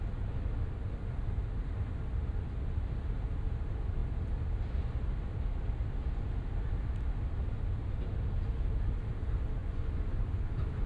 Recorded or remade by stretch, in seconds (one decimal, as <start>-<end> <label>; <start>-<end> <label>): 0.0-9.6 recorded; 9.6-10.4 remade; 10.4-10.9 recorded